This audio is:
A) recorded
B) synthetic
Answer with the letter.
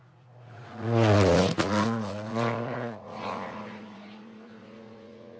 B